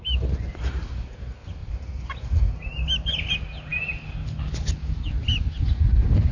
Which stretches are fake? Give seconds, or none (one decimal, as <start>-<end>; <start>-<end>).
none